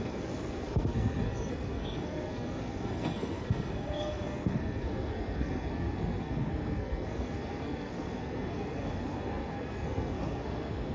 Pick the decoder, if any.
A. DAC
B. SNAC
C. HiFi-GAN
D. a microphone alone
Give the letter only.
B